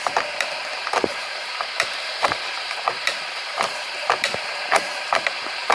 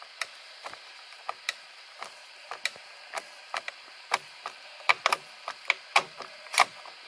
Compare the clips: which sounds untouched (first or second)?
second